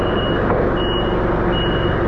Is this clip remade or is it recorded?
recorded